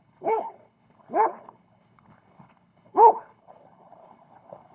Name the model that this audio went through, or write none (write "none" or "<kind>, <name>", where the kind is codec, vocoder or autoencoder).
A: codec, HILCodec